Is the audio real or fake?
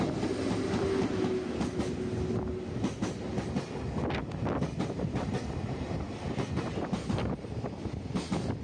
real